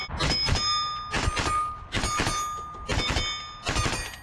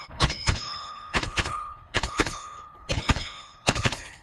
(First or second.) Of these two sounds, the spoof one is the second